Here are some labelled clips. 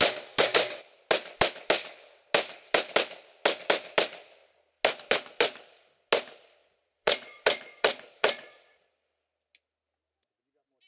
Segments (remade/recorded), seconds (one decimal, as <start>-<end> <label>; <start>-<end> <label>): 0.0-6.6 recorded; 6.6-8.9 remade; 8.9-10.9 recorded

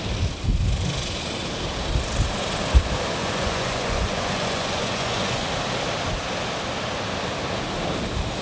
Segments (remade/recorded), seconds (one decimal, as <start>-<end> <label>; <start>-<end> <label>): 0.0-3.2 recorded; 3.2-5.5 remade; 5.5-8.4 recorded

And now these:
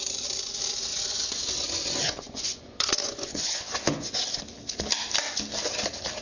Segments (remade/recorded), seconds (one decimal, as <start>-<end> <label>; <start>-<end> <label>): 0.0-0.9 recorded; 0.9-4.4 remade; 4.4-6.2 recorded

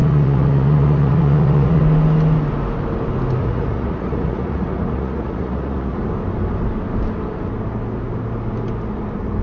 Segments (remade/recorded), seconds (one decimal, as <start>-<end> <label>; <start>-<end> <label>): 0.0-1.8 remade; 1.8-3.4 recorded; 3.4-6.0 remade; 6.0-9.4 recorded

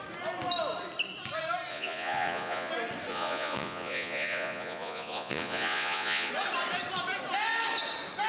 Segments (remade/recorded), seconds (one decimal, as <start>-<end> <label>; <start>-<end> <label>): 0.0-1.7 recorded; 1.7-2.7 remade; 2.7-3.1 recorded; 3.1-6.3 remade; 6.3-8.3 recorded